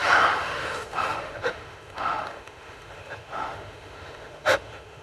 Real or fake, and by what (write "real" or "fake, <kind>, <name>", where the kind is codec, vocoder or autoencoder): fake, autoencoder, DAC-VAE